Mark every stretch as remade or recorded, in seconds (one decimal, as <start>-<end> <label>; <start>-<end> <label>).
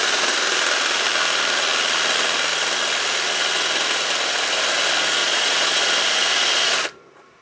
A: 0.0-5.2 recorded; 5.2-5.8 remade; 5.8-7.4 recorded